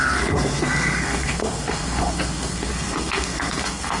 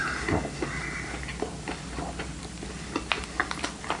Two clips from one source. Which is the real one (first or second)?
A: second